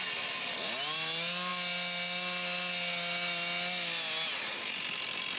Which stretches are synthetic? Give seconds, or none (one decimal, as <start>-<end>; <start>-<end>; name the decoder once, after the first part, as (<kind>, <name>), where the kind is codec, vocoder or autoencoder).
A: none

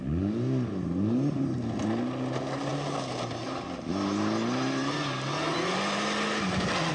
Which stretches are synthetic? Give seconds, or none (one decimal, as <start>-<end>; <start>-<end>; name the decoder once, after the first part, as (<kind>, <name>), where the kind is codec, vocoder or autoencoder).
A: none

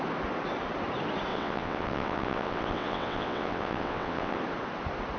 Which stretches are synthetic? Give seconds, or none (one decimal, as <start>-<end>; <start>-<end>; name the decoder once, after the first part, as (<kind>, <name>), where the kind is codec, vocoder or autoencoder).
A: 1.3-4.4 (vocoder, WaveNeXt)

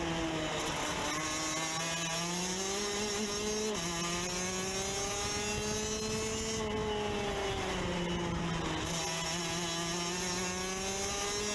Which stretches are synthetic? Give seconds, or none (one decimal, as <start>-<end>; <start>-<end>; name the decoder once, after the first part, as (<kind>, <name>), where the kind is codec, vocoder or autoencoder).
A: none